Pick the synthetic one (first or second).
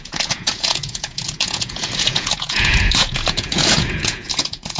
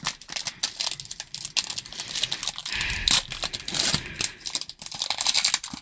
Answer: first